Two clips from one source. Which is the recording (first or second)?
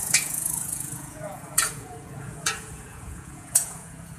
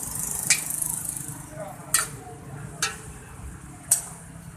second